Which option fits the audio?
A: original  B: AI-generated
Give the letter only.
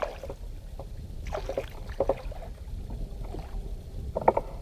A